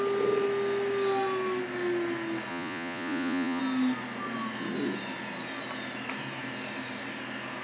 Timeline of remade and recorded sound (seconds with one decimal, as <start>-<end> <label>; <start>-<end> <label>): 0.0-2.5 recorded; 2.5-3.6 remade; 3.6-7.6 recorded